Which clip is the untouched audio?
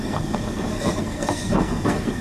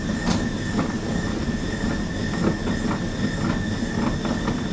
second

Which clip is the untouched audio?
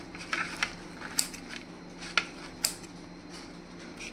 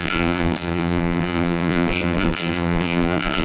first